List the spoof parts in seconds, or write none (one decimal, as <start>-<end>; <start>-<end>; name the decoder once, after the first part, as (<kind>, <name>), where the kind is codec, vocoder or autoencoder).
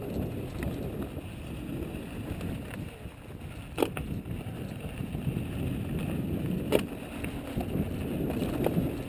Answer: none